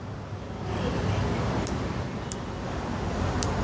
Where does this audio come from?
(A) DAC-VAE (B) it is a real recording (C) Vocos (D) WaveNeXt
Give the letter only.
B